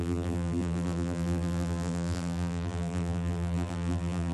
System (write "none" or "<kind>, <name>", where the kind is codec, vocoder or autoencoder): vocoder, BigVGAN v2